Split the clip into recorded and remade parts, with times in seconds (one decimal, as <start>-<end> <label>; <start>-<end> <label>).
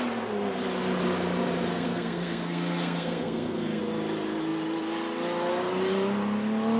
0.0-1.7 recorded; 1.7-3.8 remade; 3.8-6.8 recorded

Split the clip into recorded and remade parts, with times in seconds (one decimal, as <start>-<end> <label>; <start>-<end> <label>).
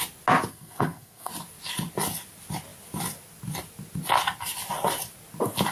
0.0-0.5 recorded; 0.5-1.3 remade; 1.3-5.7 recorded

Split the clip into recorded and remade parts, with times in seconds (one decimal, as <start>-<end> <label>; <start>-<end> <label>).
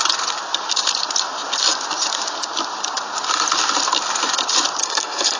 0.0-4.8 recorded; 4.8-5.4 remade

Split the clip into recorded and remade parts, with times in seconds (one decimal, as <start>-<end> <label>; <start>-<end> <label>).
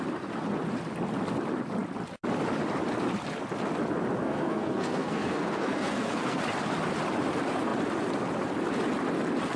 0.0-4.2 recorded; 4.2-6.4 remade; 6.4-9.6 recorded